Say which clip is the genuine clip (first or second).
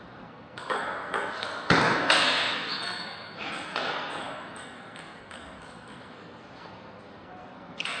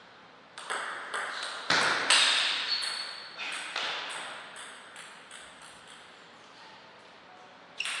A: second